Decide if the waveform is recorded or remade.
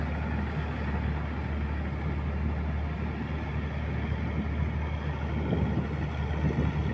recorded